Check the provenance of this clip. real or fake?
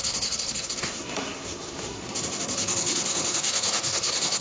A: fake